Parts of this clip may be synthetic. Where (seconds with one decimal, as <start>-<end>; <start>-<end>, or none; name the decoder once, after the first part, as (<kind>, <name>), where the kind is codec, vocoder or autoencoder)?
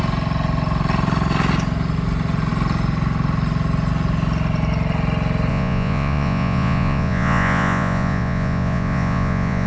5.5-9.7 (vocoder, Vocos)